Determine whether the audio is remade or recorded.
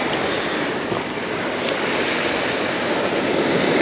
recorded